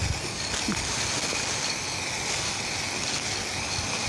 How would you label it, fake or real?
real